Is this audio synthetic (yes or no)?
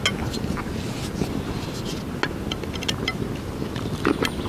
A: no